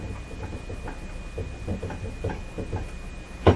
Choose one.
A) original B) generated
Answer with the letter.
A